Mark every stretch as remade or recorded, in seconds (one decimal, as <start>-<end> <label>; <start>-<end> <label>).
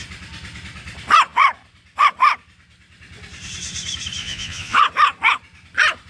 0.0-4.2 recorded; 4.2-4.8 remade; 4.8-6.1 recorded